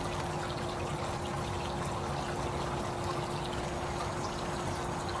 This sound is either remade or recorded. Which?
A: recorded